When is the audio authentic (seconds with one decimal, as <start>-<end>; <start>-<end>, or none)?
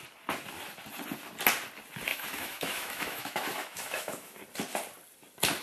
0.0-2.1; 4.4-5.6